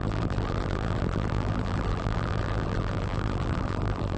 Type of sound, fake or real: fake